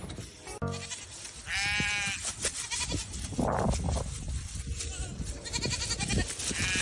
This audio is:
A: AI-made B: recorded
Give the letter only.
B